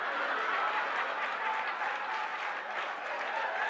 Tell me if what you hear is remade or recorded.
recorded